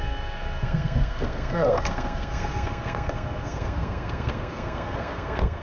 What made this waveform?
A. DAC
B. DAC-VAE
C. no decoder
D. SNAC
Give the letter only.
D